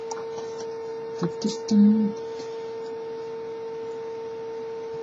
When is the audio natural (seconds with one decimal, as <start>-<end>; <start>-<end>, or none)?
0.0-5.0